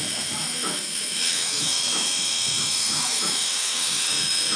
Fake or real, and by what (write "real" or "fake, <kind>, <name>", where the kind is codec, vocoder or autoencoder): fake, autoencoder, DAC-VAE